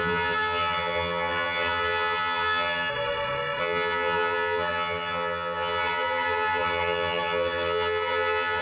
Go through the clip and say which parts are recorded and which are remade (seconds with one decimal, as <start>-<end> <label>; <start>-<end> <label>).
0.0-2.9 remade; 2.9-3.6 recorded; 3.6-8.6 remade